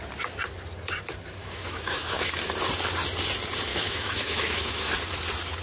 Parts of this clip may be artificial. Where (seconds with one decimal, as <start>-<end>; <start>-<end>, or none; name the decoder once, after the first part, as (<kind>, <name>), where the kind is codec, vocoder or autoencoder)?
1.4-2.3 (autoencoder, DAC-VAE); 3.7-4.9